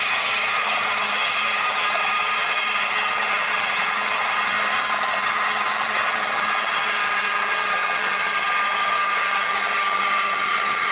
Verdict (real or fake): fake